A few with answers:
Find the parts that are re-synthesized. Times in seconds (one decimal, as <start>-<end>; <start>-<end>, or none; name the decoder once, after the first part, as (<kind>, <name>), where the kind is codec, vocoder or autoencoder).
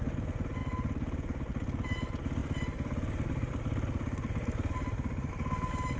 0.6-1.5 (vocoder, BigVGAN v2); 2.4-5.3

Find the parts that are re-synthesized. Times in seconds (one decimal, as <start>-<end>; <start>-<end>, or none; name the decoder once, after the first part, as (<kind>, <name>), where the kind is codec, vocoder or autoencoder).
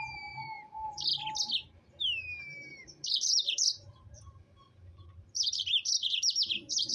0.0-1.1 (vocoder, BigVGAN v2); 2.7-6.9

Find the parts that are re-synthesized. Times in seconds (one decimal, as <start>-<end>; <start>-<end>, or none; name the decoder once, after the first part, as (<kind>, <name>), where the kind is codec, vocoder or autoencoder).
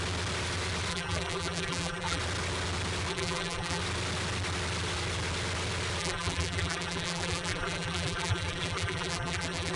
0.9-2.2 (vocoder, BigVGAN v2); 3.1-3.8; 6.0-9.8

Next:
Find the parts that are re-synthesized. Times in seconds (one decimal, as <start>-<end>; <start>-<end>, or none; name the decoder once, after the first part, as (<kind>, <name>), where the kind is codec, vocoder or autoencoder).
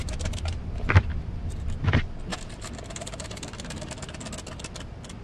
0.0-1.8 (vocoder, BigVGAN v2); 2.3-3.9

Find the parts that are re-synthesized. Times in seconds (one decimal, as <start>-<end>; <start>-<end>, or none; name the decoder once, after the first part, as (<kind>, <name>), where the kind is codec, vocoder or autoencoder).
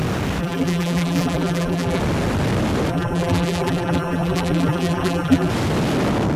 0.4-2.0 (vocoder, BigVGAN v2); 2.9-5.5